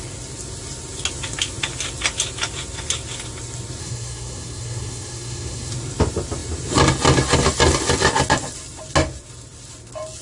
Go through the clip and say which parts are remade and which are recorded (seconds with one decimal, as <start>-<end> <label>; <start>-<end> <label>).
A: 0.0-3.8 recorded; 3.8-5.7 remade; 5.7-10.2 recorded